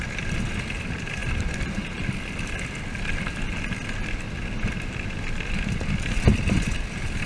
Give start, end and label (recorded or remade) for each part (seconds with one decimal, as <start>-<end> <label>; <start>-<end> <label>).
0.0-7.3 recorded